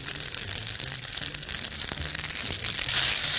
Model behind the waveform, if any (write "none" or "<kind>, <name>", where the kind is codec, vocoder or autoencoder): vocoder, BigVGAN v2